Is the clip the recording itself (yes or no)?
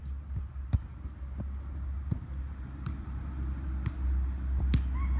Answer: yes